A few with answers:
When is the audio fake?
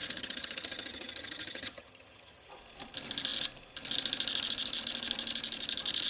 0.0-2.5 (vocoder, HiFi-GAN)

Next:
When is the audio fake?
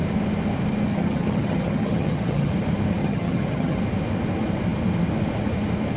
0.9-2.5 (vocoder, HiFi-GAN); 3.0-3.8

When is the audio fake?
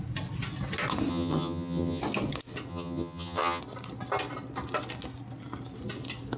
1.1-2.0 (vocoder, HiFi-GAN); 2.7-3.6